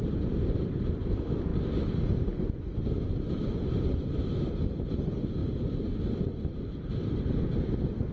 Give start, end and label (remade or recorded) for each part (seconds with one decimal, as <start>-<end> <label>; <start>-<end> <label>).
0.0-8.1 recorded